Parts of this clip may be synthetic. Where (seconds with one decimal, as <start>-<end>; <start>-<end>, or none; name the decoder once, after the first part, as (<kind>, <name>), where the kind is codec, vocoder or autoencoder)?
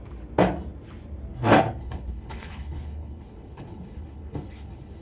1.8-5.0 (codec, HILCodec)